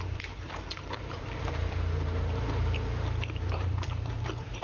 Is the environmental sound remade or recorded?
remade